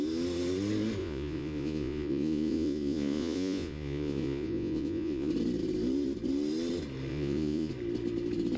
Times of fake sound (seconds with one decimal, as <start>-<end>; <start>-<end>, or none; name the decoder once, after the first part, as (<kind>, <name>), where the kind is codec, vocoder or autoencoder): 1.0-5.3 (vocoder, Vocos); 7.1-7.7